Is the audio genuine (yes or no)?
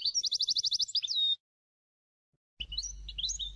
yes